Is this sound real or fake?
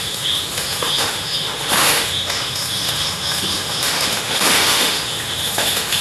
fake